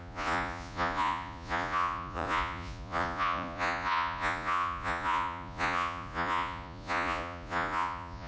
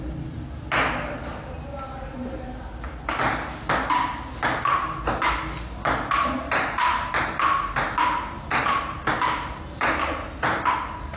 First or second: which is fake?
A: first